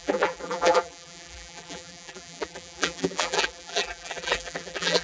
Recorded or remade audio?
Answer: remade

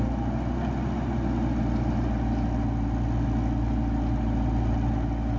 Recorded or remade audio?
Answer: recorded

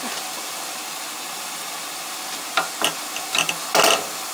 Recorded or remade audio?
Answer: recorded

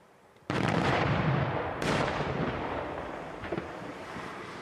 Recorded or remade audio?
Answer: remade